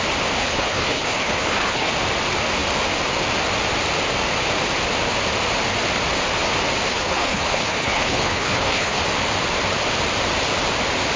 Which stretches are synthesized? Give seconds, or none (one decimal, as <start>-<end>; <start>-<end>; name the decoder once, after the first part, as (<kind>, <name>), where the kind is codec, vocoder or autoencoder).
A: 0.4-1.9 (codec, HILCodec); 6.9-9.0